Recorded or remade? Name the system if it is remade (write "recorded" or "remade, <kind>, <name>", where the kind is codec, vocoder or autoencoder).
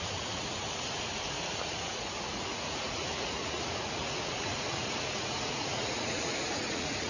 remade, vocoder, Vocos